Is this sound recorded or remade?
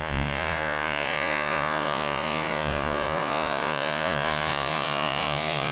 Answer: remade